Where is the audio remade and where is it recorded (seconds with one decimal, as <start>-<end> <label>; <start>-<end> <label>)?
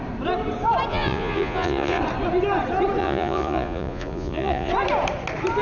0.0-0.9 recorded; 0.9-2.0 remade; 2.0-3.0 recorded; 3.0-4.7 remade; 4.7-5.6 recorded